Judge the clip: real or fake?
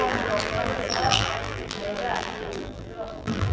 fake